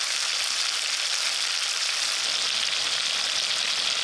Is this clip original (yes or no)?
yes